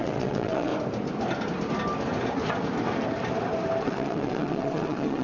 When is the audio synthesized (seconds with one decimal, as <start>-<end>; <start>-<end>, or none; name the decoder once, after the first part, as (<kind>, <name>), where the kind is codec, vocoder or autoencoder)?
0.0-0.7 (vocoder, WaveNeXt); 3.8-5.2